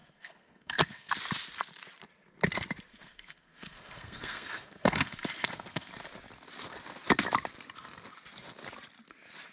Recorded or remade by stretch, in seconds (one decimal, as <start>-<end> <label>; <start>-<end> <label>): 0.0-1.1 remade; 1.1-2.9 recorded; 2.9-5.9 remade; 5.9-9.5 recorded